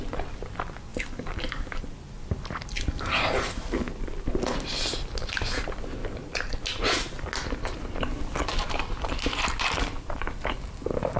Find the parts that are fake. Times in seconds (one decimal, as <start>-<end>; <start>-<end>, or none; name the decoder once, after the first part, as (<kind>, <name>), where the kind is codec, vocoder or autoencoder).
0.9-1.8 (codec, DAC)